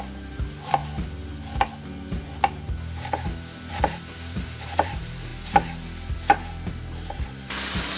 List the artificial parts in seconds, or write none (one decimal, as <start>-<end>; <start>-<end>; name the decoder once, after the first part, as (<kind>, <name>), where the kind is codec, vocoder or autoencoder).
0.0-0.8 (vocoder, BigVGAN v2); 3.7-5.3; 6.7-8.0